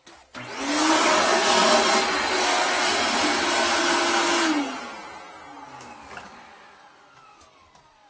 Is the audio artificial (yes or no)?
no